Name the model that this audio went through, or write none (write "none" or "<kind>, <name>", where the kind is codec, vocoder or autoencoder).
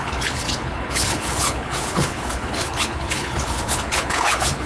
codec, HILCodec